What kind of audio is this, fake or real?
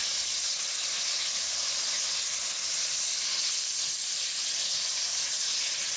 real